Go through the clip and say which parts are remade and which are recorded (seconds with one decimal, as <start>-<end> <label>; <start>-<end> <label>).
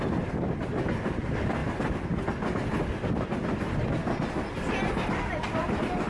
0.0-6.1 recorded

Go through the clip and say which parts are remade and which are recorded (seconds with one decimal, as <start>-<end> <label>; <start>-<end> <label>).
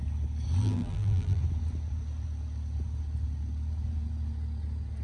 0.0-0.6 recorded; 0.6-1.4 remade; 1.4-5.0 recorded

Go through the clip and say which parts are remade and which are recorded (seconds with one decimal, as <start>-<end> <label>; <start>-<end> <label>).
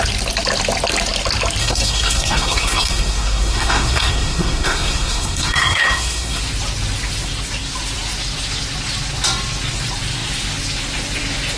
0.0-1.6 recorded; 1.6-6.4 remade; 6.4-11.6 recorded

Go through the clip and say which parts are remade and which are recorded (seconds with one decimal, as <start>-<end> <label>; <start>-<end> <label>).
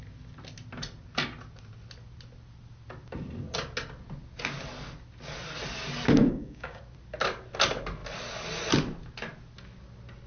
0.0-6.2 recorded; 6.2-6.8 remade; 6.8-10.3 recorded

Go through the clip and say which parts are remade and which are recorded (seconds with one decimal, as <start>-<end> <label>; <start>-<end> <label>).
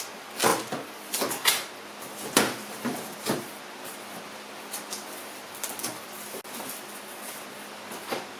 0.0-8.4 recorded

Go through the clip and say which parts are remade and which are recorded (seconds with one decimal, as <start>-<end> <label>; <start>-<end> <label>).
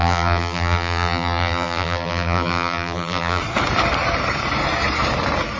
0.0-3.4 remade; 3.4-5.6 recorded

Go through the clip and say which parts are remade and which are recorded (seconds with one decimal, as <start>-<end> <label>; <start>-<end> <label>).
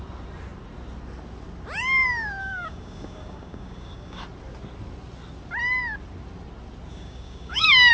0.0-2.4 recorded; 2.4-4.2 remade; 4.2-6.9 recorded; 6.9-7.9 remade